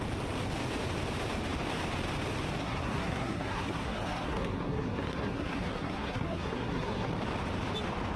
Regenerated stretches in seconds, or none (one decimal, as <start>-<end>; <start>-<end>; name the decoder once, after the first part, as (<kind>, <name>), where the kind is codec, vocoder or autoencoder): 2.6-7.1 (codec, SNAC)